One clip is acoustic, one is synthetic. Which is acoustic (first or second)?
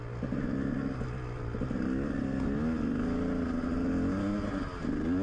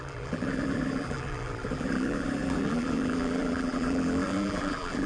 first